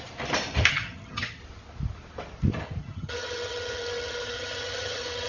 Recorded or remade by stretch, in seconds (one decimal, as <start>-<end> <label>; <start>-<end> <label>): 0.0-0.7 recorded; 0.7-1.4 remade; 1.4-2.8 recorded; 2.8-5.3 remade